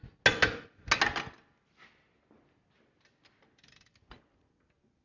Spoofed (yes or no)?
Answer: no